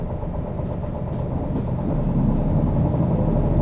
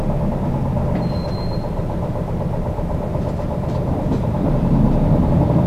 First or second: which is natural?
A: first